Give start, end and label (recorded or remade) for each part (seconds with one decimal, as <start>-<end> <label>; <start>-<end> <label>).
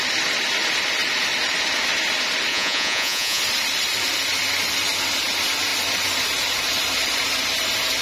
0.0-2.5 recorded; 2.5-3.4 remade; 3.4-8.0 recorded